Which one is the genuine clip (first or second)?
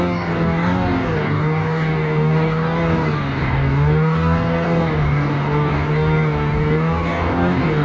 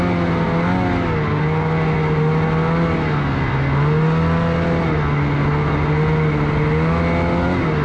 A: second